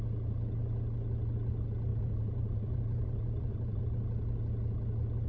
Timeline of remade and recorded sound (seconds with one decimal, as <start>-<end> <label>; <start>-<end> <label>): 0.0-1.9 recorded; 1.9-3.8 remade; 3.8-5.3 recorded